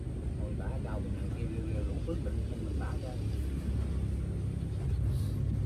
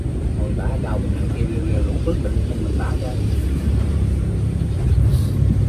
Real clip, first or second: first